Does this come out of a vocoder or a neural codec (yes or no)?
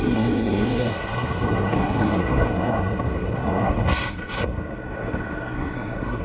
yes